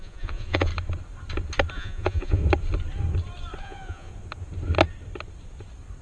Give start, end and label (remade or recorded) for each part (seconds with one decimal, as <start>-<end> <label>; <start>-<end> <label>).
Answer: 0.0-0.7 remade; 0.7-1.7 recorded; 1.7-2.4 remade; 2.4-3.6 recorded; 3.6-4.1 remade; 4.1-6.0 recorded